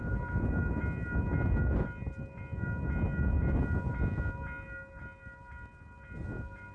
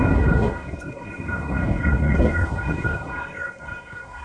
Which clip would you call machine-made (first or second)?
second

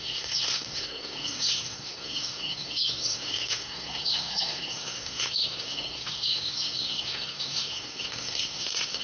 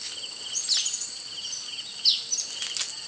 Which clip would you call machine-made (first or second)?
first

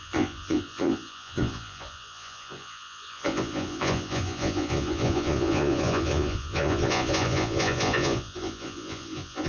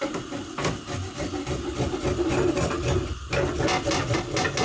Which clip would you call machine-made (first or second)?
first